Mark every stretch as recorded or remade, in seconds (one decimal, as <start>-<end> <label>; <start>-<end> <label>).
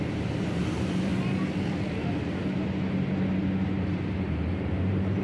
0.0-1.1 remade; 1.1-4.2 recorded; 4.2-5.2 remade